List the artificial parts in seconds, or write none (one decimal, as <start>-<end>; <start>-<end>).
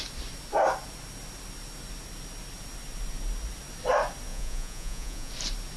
4.3-5.3